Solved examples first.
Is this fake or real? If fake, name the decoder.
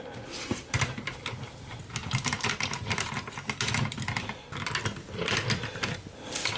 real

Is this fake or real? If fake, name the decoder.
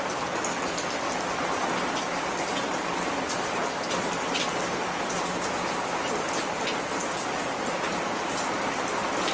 real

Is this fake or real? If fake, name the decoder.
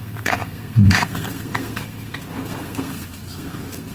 fake, codec, SNAC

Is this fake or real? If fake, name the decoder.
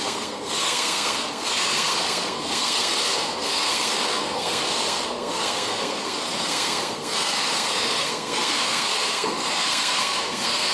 fake, codec, SNAC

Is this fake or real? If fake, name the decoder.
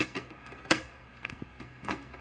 fake, codec, SNAC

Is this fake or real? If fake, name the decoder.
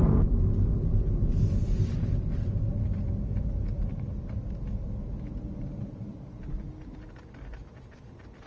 real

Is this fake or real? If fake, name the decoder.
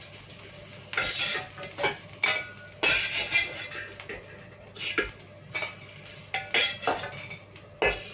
real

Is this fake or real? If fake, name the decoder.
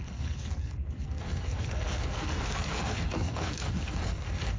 fake, codec, SNAC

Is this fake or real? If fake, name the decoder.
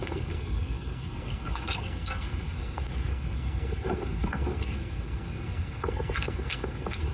fake, codec, SNAC